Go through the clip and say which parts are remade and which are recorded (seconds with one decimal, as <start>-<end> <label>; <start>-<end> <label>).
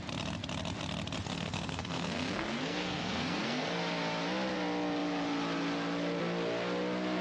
0.0-1.2 recorded; 1.2-3.8 remade; 3.8-7.2 recorded